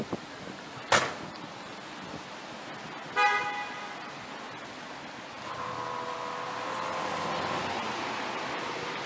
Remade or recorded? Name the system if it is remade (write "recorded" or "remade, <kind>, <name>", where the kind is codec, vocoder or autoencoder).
recorded